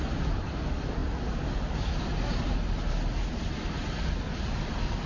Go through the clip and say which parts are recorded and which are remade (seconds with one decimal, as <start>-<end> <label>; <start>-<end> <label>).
0.0-5.1 recorded

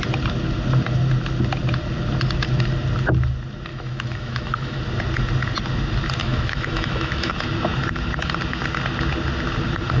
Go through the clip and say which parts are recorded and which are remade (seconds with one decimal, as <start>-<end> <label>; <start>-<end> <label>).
0.0-3.7 recorded; 3.7-4.8 remade; 4.8-6.2 recorded; 6.2-7.3 remade; 7.3-10.0 recorded

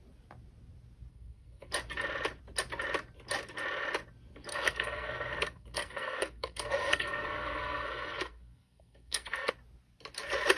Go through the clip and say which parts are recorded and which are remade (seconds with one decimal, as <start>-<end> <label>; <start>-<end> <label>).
0.0-1.1 recorded; 1.1-1.7 remade; 1.7-4.5 recorded; 4.5-9.5 remade; 9.5-10.6 recorded